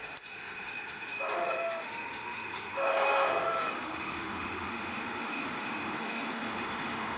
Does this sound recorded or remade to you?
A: remade